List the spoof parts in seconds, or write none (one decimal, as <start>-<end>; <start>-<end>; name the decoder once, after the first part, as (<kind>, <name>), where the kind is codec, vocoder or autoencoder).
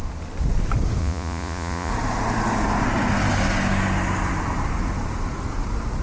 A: 1.0-1.9 (vocoder, Vocos)